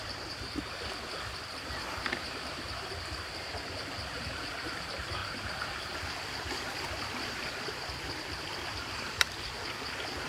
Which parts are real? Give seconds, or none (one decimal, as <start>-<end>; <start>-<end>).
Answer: none